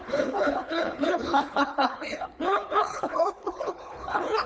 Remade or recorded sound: remade